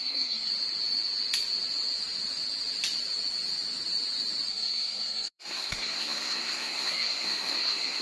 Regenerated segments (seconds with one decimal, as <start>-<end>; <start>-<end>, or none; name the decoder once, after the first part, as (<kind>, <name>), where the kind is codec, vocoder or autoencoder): 0.0-0.5 (codec, SNAC); 4.5-8.0